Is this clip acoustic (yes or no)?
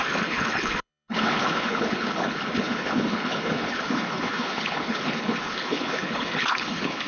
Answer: no